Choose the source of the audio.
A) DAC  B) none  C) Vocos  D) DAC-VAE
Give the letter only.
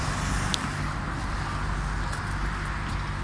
B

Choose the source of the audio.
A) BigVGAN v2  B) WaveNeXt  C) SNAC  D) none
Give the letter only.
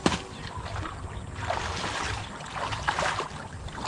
D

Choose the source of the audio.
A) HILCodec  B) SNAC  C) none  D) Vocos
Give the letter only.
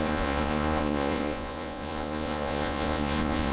D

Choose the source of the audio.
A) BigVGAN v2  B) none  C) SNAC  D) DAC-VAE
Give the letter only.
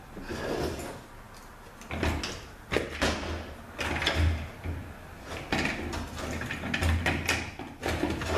B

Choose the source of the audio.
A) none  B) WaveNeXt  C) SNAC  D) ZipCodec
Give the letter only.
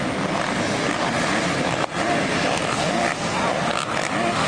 A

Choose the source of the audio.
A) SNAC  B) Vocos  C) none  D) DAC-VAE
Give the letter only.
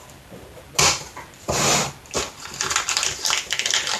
C